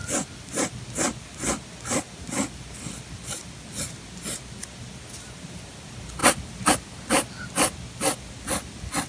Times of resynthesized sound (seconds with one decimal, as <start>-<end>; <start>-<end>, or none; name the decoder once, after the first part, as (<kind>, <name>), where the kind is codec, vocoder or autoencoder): 0.0-0.8 (vocoder, BigVGAN v2); 6.2-7.1